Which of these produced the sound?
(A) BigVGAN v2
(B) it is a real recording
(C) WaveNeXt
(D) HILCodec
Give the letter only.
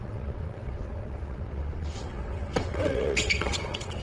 C